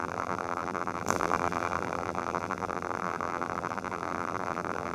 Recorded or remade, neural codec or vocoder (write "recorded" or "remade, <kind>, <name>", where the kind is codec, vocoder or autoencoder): remade, vocoder, BigVGAN v2